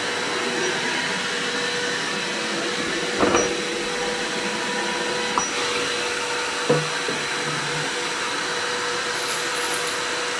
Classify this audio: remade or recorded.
recorded